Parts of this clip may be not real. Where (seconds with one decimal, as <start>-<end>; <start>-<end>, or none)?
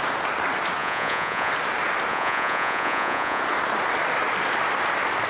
0.8-1.5; 2.1-3.4